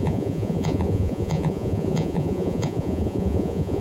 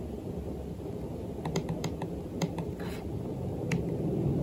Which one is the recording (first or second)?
second